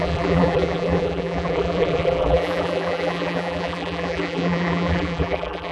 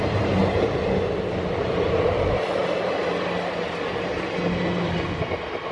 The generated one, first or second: first